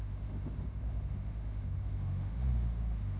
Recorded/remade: remade